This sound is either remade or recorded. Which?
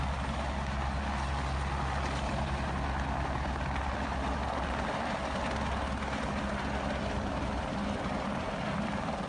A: recorded